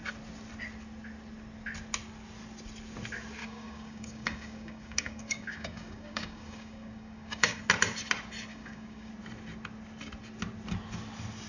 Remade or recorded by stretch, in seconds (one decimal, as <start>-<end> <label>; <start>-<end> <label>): 0.0-3.4 recorded; 3.4-7.6 remade; 7.6-8.5 recorded; 8.5-9.1 remade; 9.1-11.5 recorded